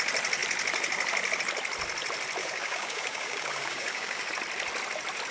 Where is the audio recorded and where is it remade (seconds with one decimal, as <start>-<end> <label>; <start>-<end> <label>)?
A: 0.0-2.4 recorded; 2.4-4.3 remade; 4.3-5.3 recorded